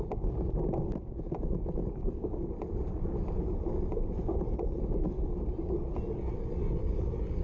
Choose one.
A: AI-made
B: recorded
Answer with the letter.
B